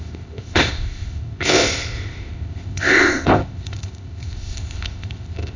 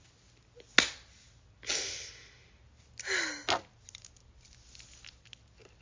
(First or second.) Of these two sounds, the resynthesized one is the first